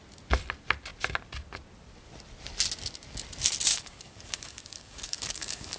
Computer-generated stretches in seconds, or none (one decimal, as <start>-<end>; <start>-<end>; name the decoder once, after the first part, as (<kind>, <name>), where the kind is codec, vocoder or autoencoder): 3.7-5.8 (codec, DAC)